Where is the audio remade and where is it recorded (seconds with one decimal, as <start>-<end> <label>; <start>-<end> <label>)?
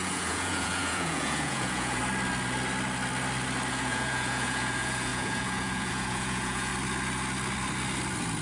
0.0-2.0 remade; 2.0-3.7 recorded; 3.7-6.7 remade; 6.7-8.4 recorded